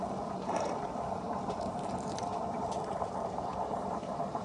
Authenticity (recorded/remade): remade